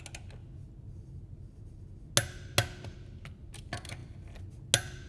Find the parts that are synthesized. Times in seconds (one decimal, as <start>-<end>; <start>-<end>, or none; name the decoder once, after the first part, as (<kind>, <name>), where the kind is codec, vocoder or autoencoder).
none